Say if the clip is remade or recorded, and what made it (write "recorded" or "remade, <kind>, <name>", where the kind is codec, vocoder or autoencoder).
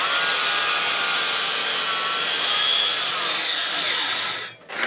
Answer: recorded